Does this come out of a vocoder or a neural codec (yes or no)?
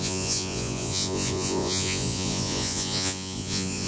yes